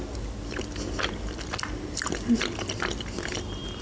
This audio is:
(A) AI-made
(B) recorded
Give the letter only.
B